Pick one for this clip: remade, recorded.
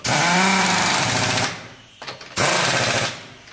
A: recorded